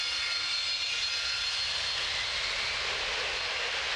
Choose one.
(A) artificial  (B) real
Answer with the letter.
B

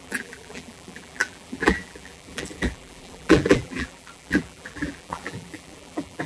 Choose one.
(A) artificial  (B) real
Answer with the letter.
A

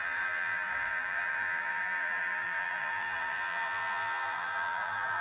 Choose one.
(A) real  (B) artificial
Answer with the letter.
B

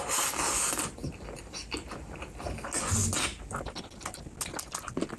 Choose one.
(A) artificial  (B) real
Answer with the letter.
B